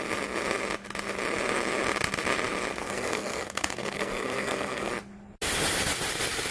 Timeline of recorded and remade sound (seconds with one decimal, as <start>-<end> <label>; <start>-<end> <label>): 0.0-2.7 recorded; 2.7-4.9 remade; 4.9-6.5 recorded

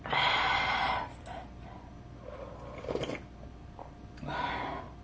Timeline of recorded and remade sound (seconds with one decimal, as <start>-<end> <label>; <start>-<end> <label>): 0.0-5.0 recorded

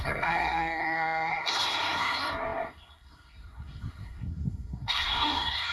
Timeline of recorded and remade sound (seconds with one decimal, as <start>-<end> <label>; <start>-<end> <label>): 0.0-5.7 remade

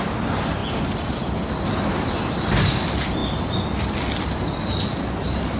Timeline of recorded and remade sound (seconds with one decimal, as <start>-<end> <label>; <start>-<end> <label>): 0.0-5.6 recorded